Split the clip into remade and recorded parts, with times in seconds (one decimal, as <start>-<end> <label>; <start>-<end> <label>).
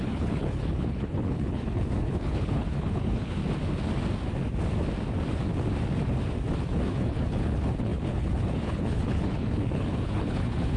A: 0.0-3.4 remade; 3.4-6.6 recorded; 6.6-10.8 remade